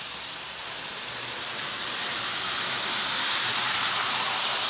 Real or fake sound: real